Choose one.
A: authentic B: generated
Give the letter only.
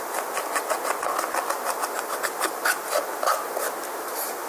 A